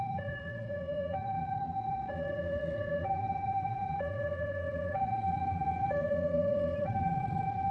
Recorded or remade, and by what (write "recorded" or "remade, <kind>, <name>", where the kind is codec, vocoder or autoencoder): remade, vocoder, Vocos